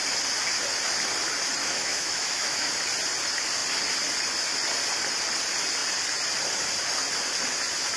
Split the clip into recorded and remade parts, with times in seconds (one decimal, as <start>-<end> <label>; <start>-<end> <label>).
0.0-1.6 recorded; 1.6-2.7 remade; 2.7-8.0 recorded